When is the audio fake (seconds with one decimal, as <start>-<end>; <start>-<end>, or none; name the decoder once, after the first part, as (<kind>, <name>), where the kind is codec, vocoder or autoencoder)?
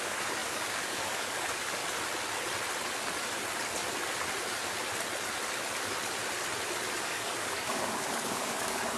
0.0-1.8 (codec, DAC); 7.0-9.0